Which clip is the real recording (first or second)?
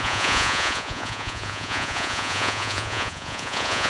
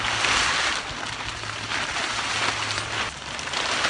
second